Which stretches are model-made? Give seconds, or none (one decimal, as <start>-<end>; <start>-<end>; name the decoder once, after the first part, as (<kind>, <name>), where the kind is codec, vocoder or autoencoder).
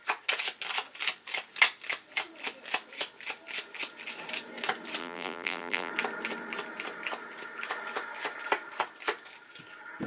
5.0-5.9 (vocoder, BigVGAN v2)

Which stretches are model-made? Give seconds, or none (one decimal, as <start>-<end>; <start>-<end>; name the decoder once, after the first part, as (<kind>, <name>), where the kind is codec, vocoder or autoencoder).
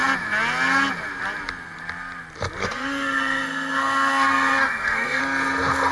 2.6-5.2 (codec, SNAC)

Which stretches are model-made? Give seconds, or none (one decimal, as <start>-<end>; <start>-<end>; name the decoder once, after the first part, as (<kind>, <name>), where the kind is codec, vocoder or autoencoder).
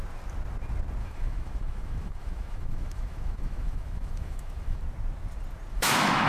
1.0-4.8 (autoencoder, DAC-VAE); 5.7-6.3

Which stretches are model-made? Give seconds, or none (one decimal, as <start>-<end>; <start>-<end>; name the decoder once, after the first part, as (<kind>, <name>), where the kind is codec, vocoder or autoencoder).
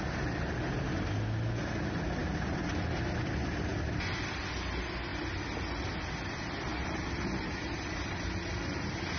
2.2-2.8 (vocoder, BigVGAN v2); 6.7-9.2